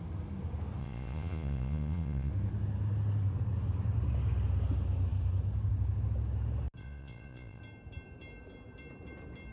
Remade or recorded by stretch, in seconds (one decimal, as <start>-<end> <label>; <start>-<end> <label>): 0.0-0.8 recorded; 0.8-2.3 remade; 2.3-6.8 recorded; 6.8-7.6 remade; 7.6-9.5 recorded